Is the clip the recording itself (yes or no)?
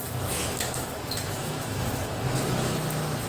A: no